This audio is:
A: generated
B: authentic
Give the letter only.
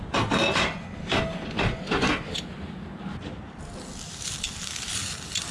B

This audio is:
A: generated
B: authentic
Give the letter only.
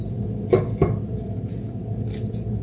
B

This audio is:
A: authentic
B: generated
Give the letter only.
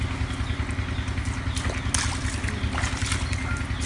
A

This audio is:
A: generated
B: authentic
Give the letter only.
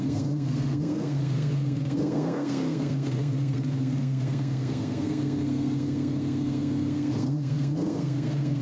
A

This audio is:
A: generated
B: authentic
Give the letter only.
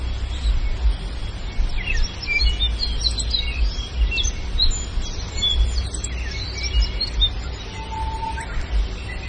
B